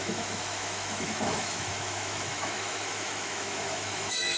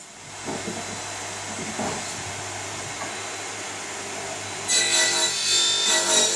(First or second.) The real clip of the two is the second